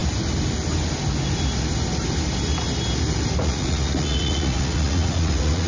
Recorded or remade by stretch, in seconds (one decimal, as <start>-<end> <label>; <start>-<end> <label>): 0.0-3.4 recorded; 3.4-5.7 remade